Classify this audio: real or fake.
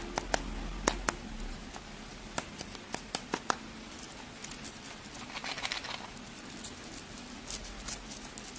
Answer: real